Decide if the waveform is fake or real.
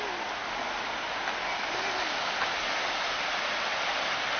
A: real